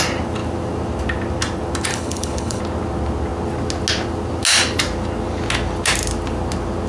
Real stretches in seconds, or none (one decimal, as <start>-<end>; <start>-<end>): 0.0-1.9; 2.6-6.9